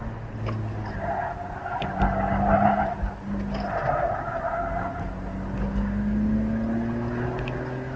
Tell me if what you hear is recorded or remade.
recorded